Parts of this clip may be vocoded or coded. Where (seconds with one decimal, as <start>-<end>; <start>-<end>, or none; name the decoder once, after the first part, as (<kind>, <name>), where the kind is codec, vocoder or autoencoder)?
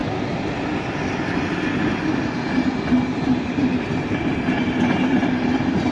none